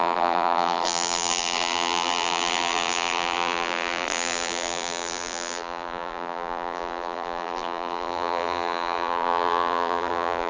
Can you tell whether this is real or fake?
fake